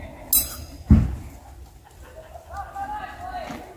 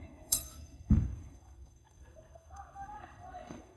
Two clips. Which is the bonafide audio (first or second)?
first